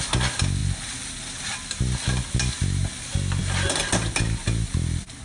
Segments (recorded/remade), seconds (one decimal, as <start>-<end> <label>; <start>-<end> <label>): 0.0-5.2 recorded